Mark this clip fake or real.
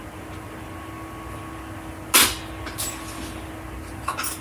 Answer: real